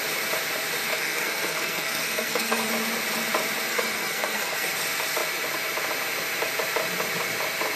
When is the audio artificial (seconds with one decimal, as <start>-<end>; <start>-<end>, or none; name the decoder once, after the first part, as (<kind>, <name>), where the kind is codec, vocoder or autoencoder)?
0.9-2.7 (codec, SNAC); 3.7-4.7

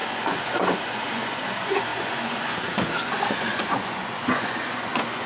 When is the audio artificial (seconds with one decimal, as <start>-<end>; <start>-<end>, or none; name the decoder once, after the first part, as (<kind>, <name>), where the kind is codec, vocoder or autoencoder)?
0.0-5.3 (vocoder, Vocos)

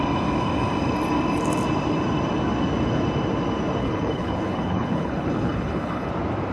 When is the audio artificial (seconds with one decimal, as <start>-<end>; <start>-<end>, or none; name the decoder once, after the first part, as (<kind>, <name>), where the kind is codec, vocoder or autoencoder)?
3.8-6.1 (codec, HILCodec)